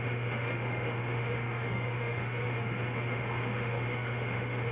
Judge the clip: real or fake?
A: fake